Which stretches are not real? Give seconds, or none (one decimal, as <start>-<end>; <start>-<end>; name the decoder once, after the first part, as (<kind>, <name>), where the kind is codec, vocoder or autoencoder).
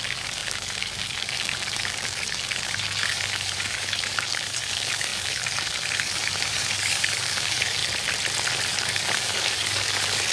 0.0-7.8 (codec, DAC); 8.7-10.3